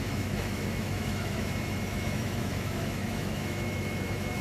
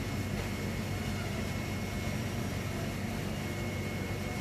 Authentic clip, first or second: second